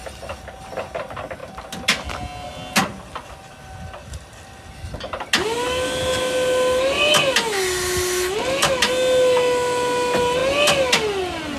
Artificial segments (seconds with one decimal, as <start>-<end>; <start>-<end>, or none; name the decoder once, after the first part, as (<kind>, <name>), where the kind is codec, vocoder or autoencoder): none